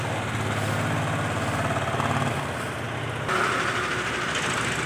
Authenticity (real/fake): real